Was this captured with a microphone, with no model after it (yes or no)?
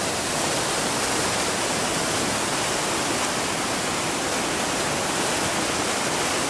yes